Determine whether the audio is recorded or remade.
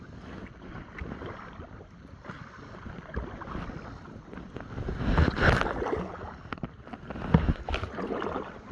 recorded